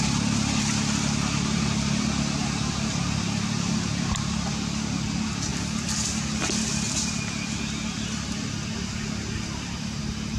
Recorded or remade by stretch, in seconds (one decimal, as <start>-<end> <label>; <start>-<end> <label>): 0.0-10.4 recorded